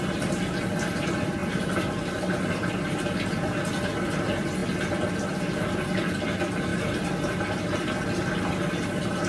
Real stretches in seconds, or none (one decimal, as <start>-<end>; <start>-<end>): 0.0-9.3